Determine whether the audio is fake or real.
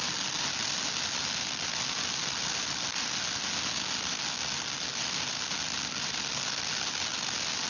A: real